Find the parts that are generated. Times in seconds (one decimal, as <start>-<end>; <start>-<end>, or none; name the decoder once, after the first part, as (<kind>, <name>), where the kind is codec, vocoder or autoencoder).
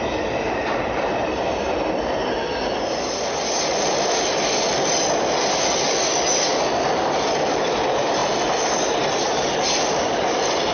0.0-2.2 (vocoder, BigVGAN v2); 3.7-8.2; 9.1-10.7